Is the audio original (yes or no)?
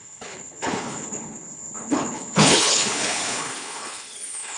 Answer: no